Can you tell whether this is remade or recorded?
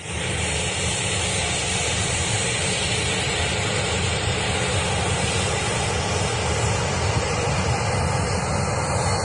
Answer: recorded